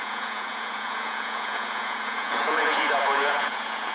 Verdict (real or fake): fake